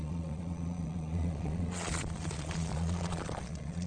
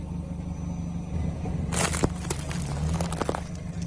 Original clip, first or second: second